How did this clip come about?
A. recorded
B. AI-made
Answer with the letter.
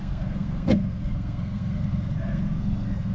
B